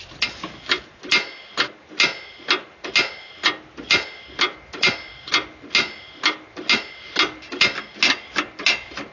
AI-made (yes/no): no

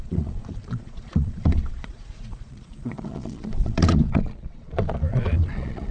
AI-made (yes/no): yes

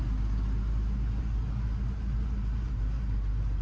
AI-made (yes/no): no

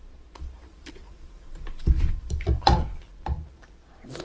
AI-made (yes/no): yes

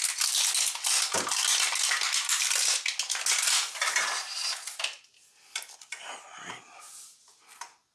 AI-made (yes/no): no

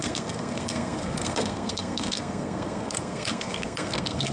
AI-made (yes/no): yes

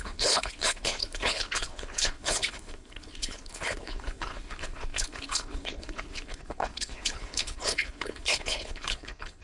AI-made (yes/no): yes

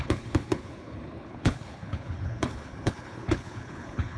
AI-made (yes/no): yes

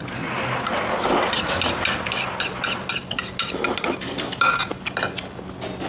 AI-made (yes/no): no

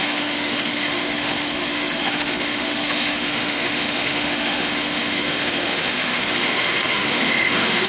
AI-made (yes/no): yes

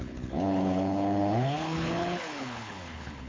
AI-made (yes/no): yes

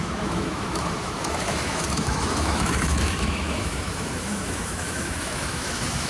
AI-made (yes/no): yes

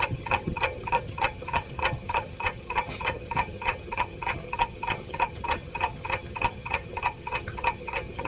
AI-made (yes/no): yes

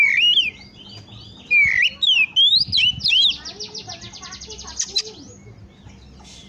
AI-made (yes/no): no